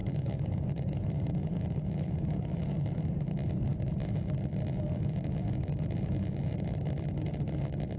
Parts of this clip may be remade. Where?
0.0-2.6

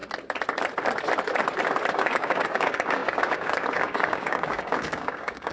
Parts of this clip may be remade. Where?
1.9-5.5

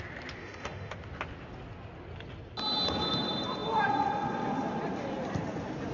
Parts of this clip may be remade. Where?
0.4-0.9

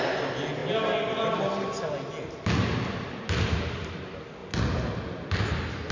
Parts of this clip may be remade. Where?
none